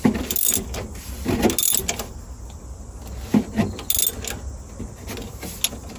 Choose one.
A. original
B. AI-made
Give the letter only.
A